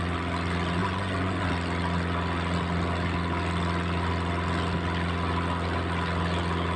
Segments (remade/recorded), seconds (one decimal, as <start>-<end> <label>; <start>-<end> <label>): 0.0-0.8 recorded; 0.8-1.5 remade; 1.5-6.8 recorded